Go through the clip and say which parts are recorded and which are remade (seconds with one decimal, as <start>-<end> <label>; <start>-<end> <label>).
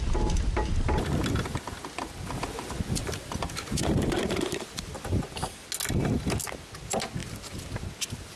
0.0-3.0 recorded; 3.0-5.2 remade; 5.2-8.4 recorded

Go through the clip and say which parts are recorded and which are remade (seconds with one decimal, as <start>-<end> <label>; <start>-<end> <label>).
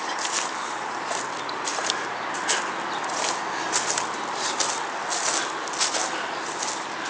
0.0-7.1 recorded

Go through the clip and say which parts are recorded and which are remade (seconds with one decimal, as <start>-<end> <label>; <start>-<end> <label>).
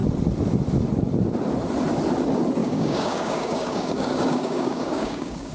0.0-2.6 recorded; 2.6-5.5 remade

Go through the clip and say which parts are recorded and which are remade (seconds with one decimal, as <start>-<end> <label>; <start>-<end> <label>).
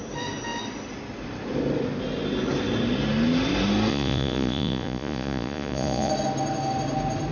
0.0-3.9 recorded; 3.9-6.1 remade; 6.1-7.3 recorded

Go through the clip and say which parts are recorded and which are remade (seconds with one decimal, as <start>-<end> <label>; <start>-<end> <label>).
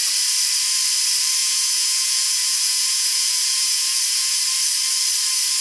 0.0-1.4 recorded; 1.4-4.4 remade; 4.4-5.6 recorded